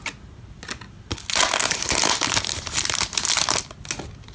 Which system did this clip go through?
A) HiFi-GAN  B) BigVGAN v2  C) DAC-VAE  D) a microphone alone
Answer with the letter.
D